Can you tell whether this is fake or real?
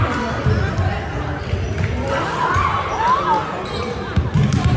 real